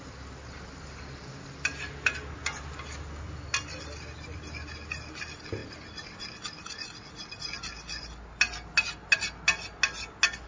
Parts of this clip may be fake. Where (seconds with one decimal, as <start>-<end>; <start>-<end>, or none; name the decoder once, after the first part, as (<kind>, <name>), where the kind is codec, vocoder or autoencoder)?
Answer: none